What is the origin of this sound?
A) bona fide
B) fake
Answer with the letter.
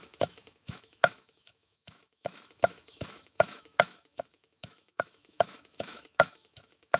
B